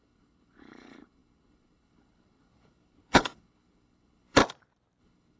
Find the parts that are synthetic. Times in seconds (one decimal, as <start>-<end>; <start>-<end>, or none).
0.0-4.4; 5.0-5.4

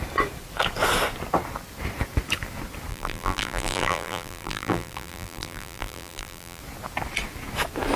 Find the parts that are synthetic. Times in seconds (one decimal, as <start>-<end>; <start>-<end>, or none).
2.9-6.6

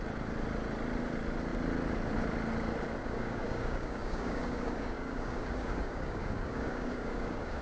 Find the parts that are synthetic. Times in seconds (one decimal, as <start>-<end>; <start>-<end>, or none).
3.0-7.6